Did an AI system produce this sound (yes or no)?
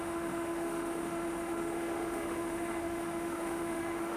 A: yes